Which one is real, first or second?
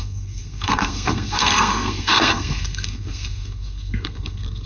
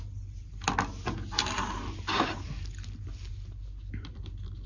second